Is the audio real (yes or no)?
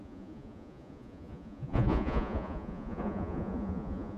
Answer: no